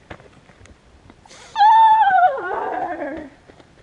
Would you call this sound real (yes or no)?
no